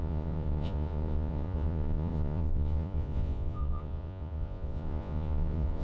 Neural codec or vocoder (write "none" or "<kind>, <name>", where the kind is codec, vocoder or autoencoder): vocoder, Vocos